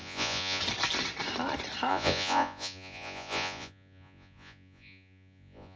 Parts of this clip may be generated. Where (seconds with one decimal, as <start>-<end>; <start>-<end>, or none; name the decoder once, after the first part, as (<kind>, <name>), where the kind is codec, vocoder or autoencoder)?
0.0-0.6 (vocoder, Vocos); 1.9-5.8